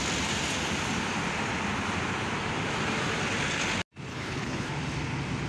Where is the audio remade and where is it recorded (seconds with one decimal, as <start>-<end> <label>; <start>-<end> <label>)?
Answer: 0.0-4.1 recorded; 4.1-4.7 remade; 4.7-5.5 recorded